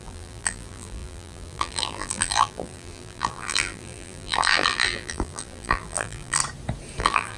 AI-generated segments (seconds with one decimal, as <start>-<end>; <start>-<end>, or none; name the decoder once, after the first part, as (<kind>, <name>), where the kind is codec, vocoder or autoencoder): 0.0-6.4 (vocoder, BigVGAN v2); 7.0-7.4